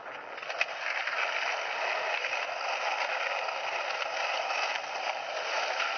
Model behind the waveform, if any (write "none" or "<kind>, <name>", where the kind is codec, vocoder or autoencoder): none